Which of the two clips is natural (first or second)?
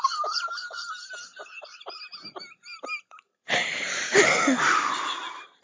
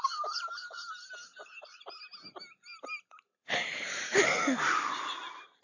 second